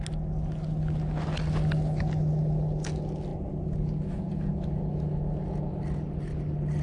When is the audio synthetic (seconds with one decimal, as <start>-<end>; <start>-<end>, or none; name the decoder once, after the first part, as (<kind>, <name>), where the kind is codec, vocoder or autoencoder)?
none